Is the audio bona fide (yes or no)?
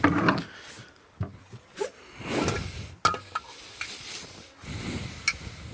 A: yes